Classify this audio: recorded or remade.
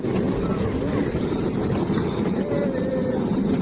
recorded